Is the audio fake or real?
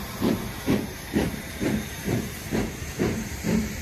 fake